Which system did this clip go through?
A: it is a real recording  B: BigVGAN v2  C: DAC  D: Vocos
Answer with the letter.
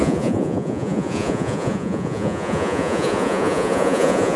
D